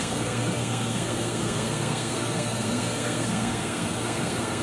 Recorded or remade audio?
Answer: remade